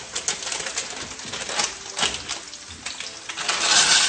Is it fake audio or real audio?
real